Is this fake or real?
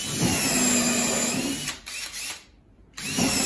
real